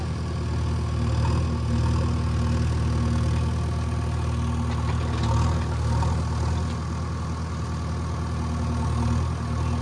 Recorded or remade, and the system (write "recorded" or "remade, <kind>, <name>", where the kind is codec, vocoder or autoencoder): recorded